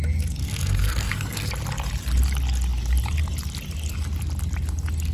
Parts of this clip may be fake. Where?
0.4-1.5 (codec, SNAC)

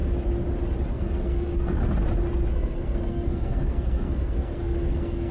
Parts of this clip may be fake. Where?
0.9-1.8 (codec, SNAC); 2.5-5.3

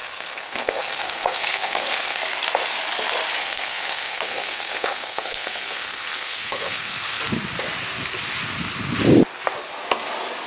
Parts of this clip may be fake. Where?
0.0-2.2 (codec, SNAC); 3.4-7.2

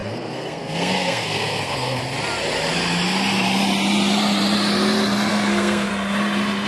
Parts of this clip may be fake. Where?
0.0-2.0 (codec, SNAC); 5.3-5.9